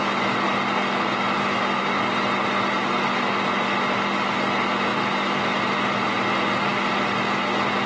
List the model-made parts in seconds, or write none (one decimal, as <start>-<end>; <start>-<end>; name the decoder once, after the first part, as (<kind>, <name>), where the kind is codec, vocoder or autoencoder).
0.0-1.8 (vocoder, BigVGAN v2)